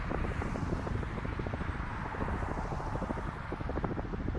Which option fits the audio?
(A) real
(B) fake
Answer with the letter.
A